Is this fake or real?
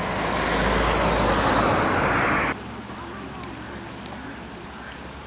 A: real